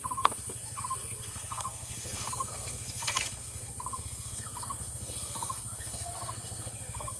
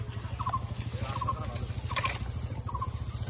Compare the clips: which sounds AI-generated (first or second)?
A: first